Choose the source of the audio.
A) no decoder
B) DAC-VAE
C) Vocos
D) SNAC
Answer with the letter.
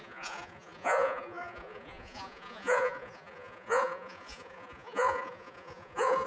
C